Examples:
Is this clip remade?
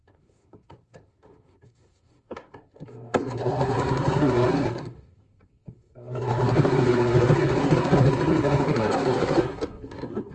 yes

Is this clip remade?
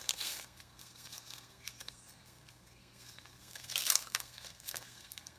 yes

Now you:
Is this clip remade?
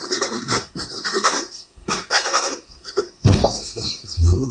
yes